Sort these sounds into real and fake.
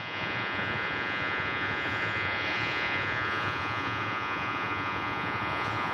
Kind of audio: fake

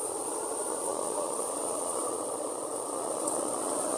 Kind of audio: fake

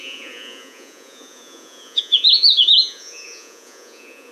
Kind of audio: fake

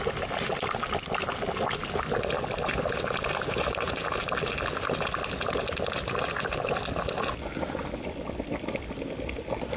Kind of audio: real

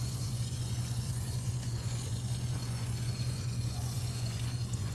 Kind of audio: fake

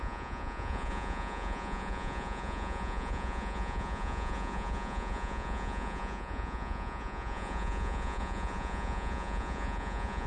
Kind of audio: fake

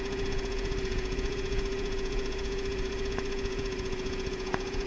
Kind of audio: fake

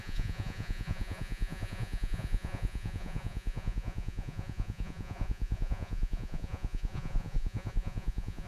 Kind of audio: fake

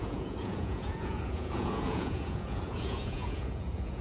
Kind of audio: fake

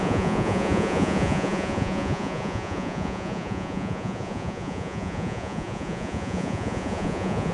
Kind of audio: fake